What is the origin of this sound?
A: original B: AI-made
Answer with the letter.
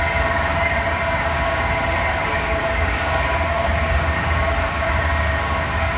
B